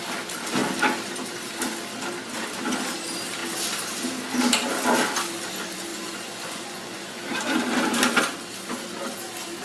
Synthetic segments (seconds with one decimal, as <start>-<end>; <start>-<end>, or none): 5.9-7.2